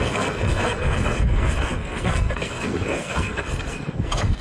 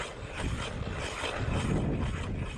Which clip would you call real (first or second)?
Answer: second